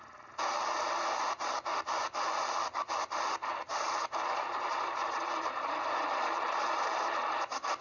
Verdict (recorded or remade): recorded